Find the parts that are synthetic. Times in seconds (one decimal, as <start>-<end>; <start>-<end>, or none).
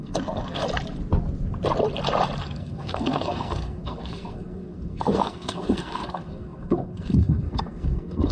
0.0-0.6; 2.4-8.3